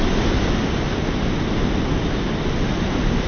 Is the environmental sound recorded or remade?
recorded